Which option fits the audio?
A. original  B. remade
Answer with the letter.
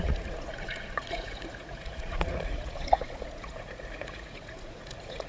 B